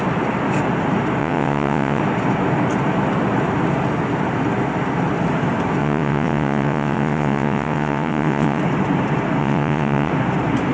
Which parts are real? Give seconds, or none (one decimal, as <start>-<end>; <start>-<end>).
0.0-1.2; 2.0-5.8; 8.6-9.4; 10.1-10.7

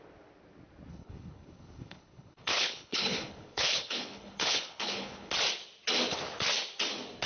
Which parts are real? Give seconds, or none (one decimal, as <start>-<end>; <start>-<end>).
0.0-0.9; 5.3-7.3

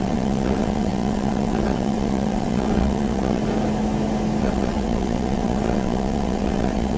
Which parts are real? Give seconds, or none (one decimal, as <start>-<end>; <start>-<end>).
3.4-4.4

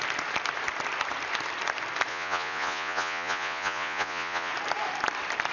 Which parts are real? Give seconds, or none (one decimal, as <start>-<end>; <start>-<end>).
0.0-2.1; 4.5-5.5

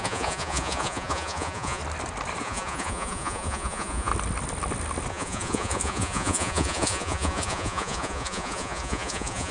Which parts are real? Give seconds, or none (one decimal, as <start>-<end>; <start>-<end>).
1.8-2.4; 4.1-5.1